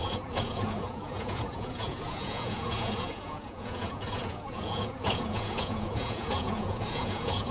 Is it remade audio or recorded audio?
remade